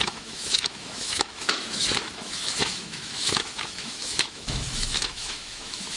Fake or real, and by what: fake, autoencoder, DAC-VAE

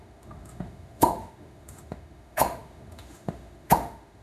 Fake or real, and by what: fake, autoencoder, DAC-VAE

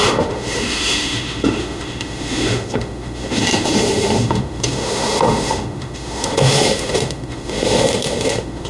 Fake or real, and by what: fake, autoencoder, DAC-VAE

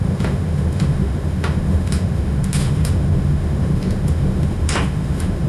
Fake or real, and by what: fake, autoencoder, DAC-VAE